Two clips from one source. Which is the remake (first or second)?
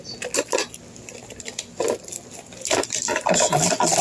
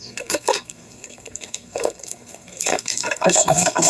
second